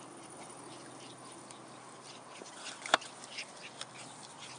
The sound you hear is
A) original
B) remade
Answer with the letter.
A